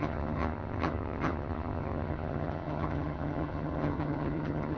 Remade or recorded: remade